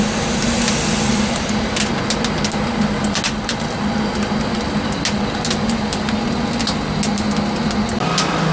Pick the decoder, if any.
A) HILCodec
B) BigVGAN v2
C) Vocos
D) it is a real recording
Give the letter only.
D